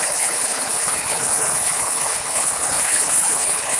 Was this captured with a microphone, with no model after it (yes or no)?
no